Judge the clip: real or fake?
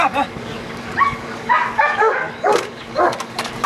fake